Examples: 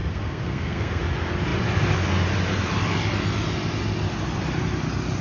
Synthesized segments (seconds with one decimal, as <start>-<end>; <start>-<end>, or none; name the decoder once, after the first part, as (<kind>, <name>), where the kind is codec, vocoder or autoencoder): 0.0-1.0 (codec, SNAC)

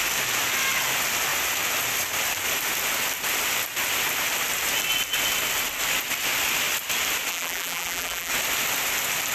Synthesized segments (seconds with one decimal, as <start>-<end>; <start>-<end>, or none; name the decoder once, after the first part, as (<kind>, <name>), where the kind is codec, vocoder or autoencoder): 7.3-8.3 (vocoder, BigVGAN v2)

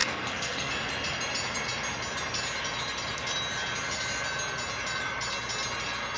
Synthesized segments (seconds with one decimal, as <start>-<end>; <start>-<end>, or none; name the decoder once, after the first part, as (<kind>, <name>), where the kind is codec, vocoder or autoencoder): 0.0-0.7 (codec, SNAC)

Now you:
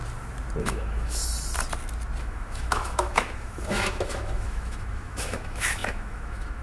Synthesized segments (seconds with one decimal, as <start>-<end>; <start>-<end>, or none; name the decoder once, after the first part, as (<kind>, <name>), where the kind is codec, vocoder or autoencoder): 0.6-1.2 (autoencoder, DAC-VAE); 2.2-6.6

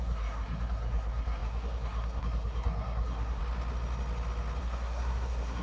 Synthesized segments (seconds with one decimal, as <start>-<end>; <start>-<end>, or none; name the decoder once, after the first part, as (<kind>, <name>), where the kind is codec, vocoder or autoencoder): 0.0-3.4 (codec, SNAC); 4.6-5.6

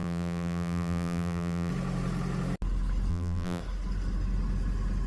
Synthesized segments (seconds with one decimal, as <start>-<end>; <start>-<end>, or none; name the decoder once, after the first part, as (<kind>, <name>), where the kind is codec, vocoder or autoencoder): 0.0-1.7 (vocoder, BigVGAN v2); 3.1-3.6

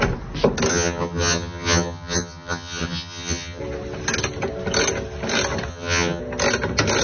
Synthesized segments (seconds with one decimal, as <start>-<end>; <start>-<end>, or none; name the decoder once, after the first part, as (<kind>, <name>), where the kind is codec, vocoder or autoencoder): 0.7-3.6 (vocoder, HiFi-GAN); 5.7-6.2